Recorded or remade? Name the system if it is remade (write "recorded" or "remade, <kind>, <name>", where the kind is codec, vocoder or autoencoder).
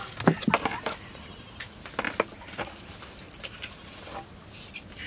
recorded